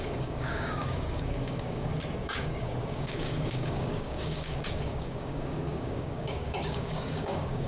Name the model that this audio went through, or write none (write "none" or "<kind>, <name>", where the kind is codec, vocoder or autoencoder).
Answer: codec, DAC